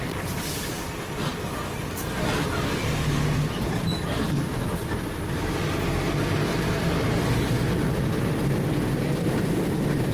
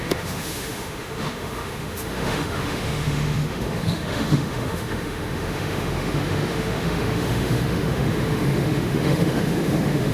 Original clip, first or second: first